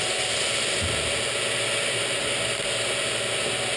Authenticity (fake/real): real